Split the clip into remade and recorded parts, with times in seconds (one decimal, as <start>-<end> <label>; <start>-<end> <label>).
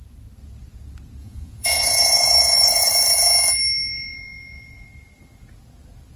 0.0-1.2 recorded; 1.2-2.9 remade; 2.9-6.2 recorded